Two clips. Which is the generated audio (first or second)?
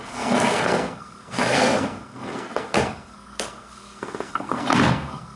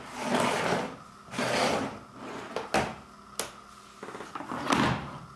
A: first